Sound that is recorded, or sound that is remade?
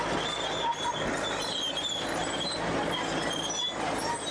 recorded